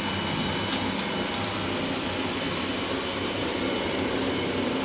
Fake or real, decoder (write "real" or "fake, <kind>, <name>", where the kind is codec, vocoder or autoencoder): real